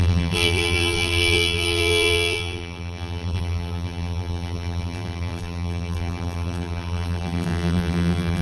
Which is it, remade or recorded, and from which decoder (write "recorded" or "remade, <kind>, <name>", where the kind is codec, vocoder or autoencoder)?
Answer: remade, vocoder, BigVGAN v2